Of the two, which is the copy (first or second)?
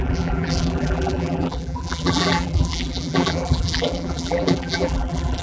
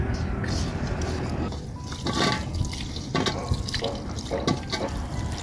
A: first